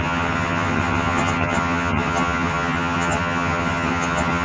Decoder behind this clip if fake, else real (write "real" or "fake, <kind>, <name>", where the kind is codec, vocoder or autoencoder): fake, vocoder, HiFi-GAN